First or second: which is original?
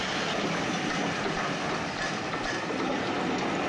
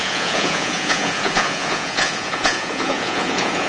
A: first